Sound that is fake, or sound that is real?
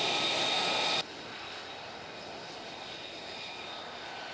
real